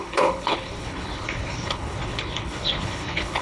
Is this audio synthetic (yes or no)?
yes